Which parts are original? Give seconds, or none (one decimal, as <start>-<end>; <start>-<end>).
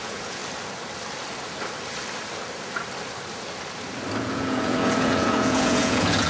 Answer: 0.4-4.2